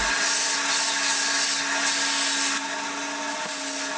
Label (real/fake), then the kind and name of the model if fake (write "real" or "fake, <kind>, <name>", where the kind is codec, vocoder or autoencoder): real